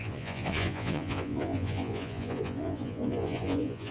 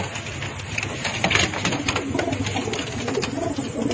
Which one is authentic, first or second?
second